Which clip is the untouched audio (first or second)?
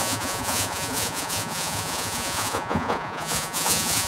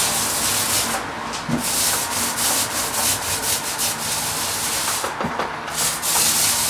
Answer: second